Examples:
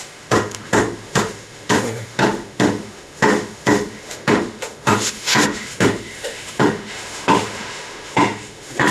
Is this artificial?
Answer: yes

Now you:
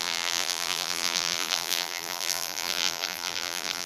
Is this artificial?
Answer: yes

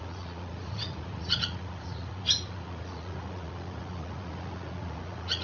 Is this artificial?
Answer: yes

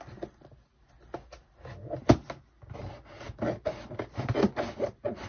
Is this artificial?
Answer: no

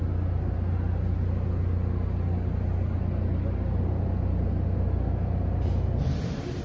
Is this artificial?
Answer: no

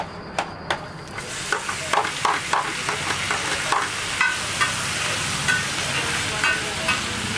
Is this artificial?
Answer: no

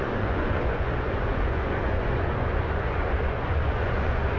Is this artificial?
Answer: yes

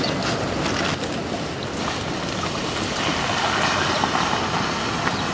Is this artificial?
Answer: no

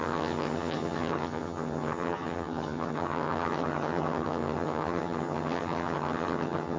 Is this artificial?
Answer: yes